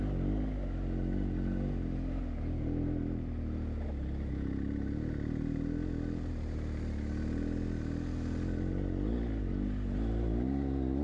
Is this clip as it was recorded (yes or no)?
yes